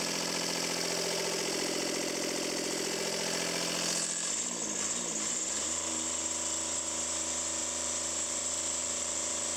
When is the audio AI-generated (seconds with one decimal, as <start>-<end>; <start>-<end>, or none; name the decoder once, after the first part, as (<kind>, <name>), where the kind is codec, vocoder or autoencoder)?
7.6-8.4 (vocoder, BigVGAN v2); 8.8-9.6